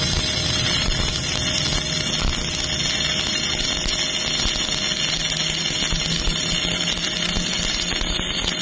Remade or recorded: recorded